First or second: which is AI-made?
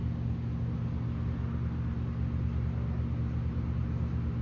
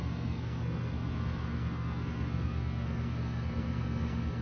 second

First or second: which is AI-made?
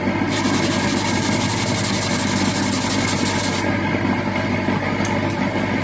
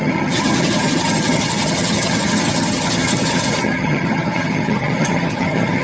second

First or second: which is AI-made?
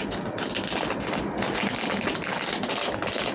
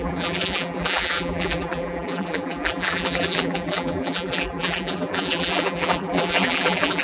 second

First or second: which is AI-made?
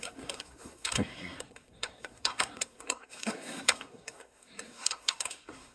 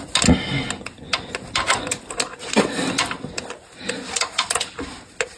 first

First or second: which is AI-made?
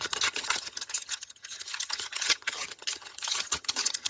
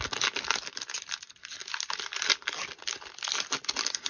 first